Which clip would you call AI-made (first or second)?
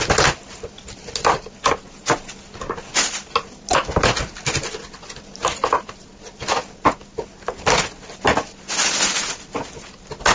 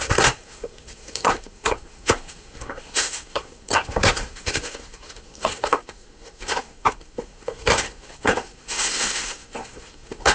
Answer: second